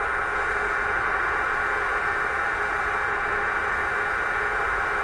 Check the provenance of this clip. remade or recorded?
recorded